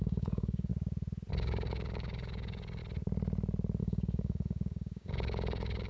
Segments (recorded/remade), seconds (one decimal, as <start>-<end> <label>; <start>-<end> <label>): 0.0-0.7 remade; 0.7-1.3 recorded; 1.3-2.8 remade; 2.8-3.8 recorded; 3.8-5.9 remade